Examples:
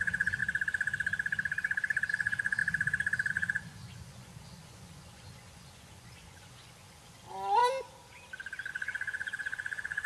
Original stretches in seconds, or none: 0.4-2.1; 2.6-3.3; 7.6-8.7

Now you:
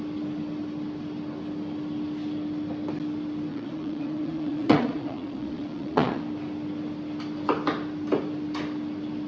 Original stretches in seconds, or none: 0.0-3.5; 6.2-9.3

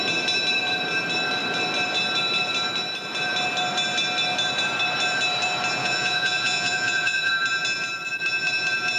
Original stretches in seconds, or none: 0.0-5.8; 7.3-9.0

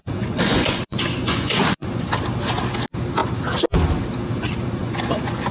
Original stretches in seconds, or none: 2.1-4.8

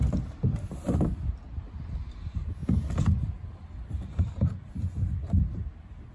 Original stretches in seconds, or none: 0.0-6.1